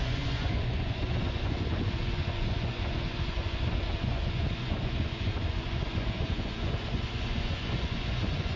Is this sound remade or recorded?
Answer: remade